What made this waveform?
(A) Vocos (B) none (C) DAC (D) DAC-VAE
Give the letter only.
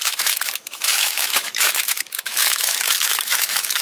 D